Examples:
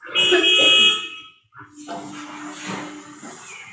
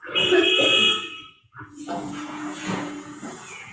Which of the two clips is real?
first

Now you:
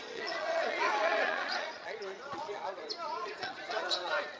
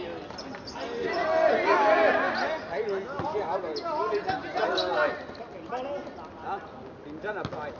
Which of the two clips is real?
second